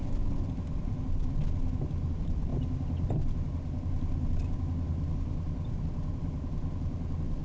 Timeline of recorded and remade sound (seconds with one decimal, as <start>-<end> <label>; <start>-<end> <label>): 0.0-6.1 recorded; 6.1-6.6 remade; 6.6-7.4 recorded